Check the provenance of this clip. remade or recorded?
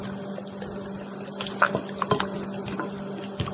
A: recorded